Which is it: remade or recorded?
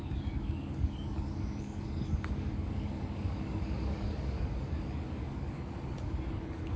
remade